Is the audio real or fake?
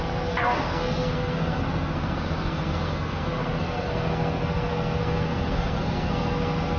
fake